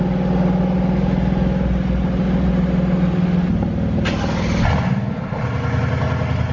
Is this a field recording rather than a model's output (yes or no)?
yes